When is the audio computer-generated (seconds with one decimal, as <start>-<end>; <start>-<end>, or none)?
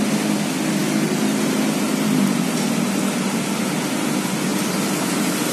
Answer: none